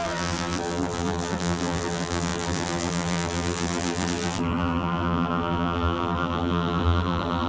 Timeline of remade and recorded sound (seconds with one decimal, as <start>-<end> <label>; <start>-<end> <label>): 0.0-7.5 remade